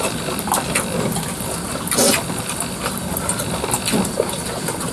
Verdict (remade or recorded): recorded